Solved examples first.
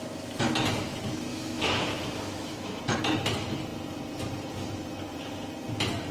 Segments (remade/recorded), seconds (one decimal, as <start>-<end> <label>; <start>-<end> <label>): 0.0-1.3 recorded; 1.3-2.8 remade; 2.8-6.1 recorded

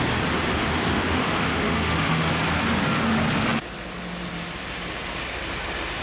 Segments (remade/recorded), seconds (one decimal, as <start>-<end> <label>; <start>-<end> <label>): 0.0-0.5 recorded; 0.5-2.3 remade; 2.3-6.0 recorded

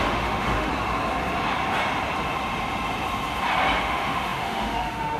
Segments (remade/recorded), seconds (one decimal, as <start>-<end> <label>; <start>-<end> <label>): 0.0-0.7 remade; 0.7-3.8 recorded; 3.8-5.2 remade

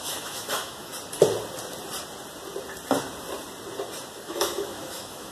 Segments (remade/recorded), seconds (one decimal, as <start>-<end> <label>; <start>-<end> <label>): 0.0-0.9 remade; 0.9-4.1 recorded; 4.1-5.3 remade

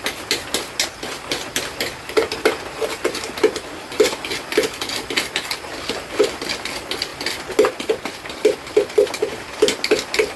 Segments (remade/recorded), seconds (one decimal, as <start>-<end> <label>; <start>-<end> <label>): 0.0-10.4 recorded